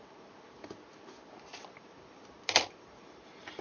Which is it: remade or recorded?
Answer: recorded